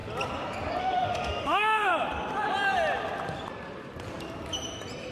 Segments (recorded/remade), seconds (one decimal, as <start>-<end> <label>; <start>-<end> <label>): 0.0-0.8 recorded; 0.8-1.9 remade; 1.9-5.1 recorded